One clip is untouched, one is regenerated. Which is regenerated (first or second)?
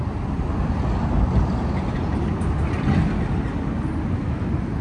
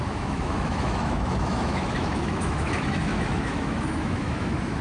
second